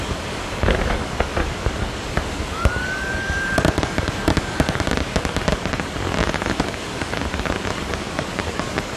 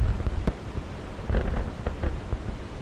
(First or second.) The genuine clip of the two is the second